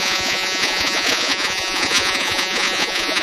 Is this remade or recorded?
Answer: remade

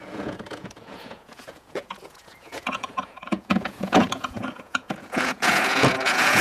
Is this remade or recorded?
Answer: remade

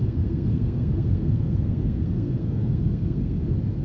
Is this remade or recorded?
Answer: remade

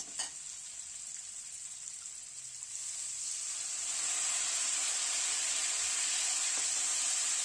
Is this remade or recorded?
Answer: recorded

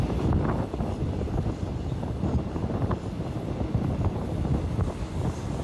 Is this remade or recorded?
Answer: recorded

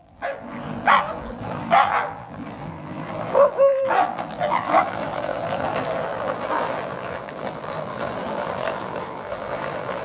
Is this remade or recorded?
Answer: remade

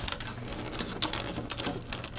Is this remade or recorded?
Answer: recorded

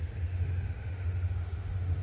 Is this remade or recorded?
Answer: remade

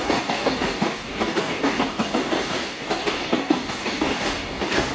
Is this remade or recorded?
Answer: remade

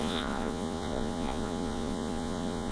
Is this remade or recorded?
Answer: remade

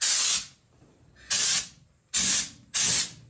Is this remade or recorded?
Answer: recorded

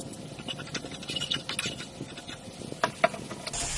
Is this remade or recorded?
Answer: recorded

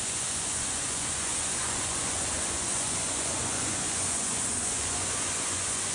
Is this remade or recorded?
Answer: remade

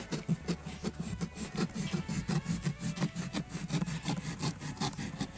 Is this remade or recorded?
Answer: recorded